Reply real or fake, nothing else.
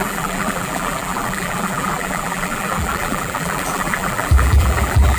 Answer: fake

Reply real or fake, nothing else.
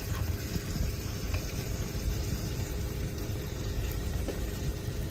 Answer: fake